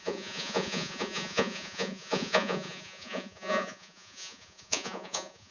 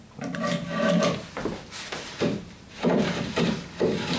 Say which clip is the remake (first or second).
first